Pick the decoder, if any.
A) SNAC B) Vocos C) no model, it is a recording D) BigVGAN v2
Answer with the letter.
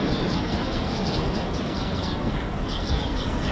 A